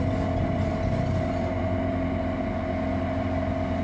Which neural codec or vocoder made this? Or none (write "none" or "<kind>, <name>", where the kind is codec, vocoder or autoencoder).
none